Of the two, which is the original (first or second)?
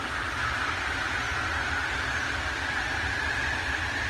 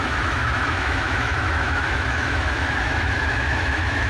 first